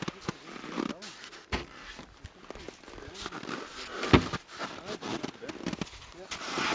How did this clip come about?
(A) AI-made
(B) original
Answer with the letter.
B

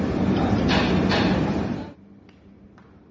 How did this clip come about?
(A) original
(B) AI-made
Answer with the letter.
A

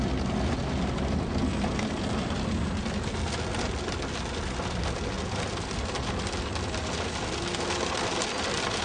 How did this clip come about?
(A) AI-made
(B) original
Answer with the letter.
B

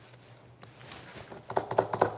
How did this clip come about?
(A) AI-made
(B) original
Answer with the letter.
B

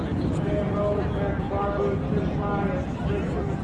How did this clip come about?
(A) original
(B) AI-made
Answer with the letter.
A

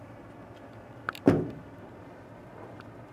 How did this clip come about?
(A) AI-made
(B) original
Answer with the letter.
A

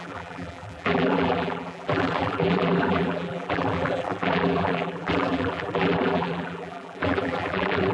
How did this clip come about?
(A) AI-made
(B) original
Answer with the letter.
A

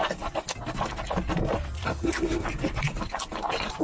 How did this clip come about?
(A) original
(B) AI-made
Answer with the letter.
A